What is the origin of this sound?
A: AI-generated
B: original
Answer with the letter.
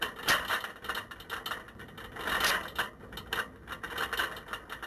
B